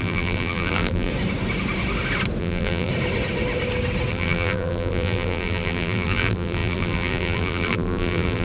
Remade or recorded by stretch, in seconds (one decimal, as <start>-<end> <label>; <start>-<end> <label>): 0.0-1.1 remade; 1.1-2.4 recorded; 2.4-2.9 remade; 2.9-4.1 recorded; 4.1-8.4 remade